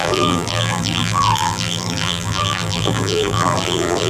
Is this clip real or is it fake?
fake